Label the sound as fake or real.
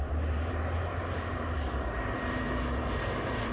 fake